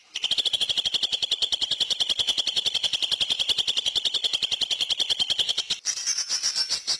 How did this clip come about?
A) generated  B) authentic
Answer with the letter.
B